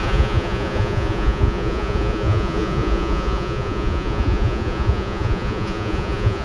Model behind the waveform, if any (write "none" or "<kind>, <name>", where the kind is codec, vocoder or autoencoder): vocoder, Vocos